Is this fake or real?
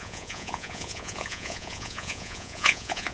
fake